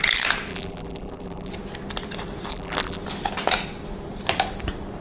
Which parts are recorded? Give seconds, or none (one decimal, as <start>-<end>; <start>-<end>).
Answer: 0.0-0.5; 1.5-2.5; 3.0-5.0